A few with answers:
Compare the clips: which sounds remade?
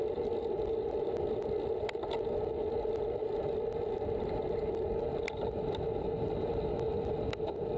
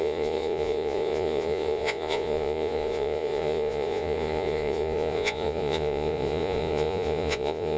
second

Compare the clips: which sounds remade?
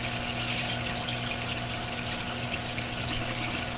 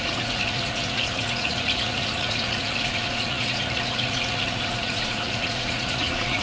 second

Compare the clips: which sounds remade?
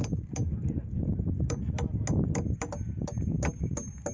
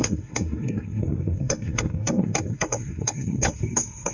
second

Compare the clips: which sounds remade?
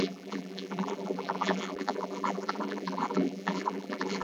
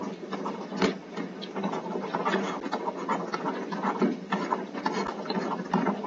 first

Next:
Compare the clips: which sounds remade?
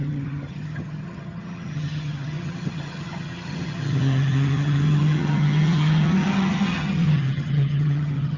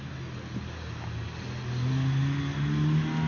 first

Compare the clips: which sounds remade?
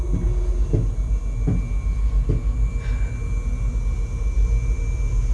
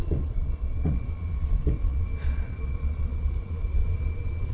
second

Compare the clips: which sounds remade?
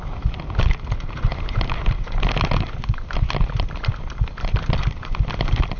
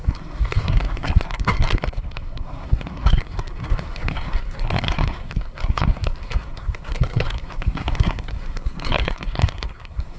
second